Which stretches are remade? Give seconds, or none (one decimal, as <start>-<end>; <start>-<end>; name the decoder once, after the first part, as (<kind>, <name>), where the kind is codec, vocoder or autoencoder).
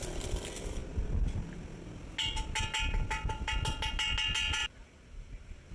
4.6-5.7 (vocoder, BigVGAN v2)